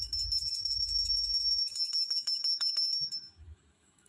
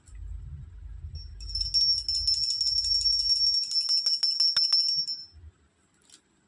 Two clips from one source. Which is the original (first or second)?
second